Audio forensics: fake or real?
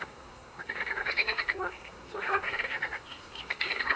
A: fake